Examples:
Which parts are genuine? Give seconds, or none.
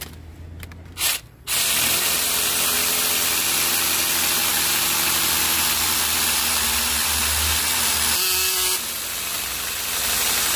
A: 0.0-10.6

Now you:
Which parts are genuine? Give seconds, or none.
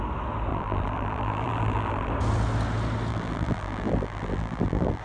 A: 0.0-0.5; 2.1-3.1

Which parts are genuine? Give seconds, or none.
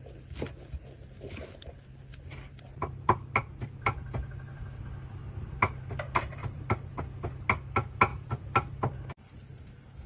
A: 0.0-2.1; 4.7-5.2; 7.0-8.1; 9.3-10.1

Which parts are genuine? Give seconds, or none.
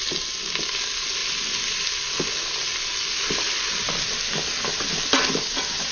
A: 0.0-5.9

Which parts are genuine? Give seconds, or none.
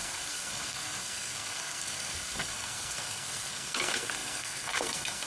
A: none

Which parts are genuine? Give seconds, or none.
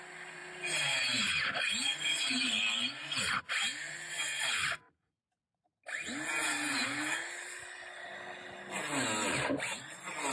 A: 0.0-10.3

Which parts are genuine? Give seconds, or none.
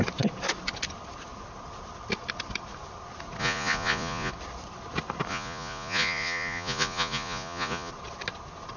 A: 0.0-3.4; 4.3-5.3; 7.9-8.8